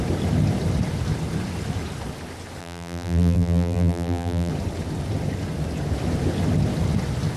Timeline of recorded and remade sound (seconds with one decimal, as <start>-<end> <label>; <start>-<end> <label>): 0.0-2.6 recorded; 2.6-4.5 remade; 4.5-7.4 recorded